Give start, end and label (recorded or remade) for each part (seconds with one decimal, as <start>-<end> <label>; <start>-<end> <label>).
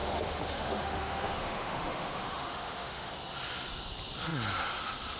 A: 0.0-3.1 remade; 3.1-5.2 recorded